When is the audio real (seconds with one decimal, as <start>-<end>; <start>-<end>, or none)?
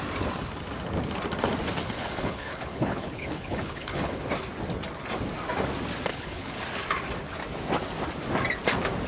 0.0-1.8; 4.2-6.1; 6.6-9.1